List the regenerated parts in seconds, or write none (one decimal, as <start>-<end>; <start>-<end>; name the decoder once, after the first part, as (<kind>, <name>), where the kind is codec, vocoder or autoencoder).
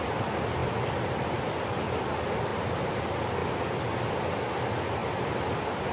none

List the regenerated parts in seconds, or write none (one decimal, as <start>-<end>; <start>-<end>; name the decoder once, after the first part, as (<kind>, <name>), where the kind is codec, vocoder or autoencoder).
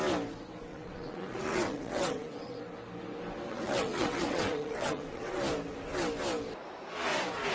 0.7-2.6 (vocoder, WaveNeXt); 3.5-5.4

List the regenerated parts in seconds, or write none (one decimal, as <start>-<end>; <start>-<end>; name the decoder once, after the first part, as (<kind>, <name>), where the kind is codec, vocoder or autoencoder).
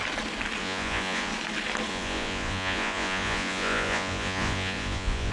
0.6-1.3 (vocoder, Vocos); 1.9-5.3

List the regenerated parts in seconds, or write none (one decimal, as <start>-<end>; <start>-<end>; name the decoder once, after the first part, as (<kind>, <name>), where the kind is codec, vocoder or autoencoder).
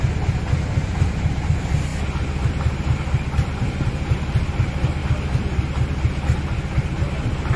none